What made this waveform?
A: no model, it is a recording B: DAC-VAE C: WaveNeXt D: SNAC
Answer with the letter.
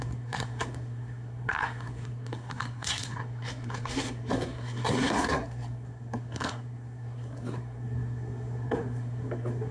D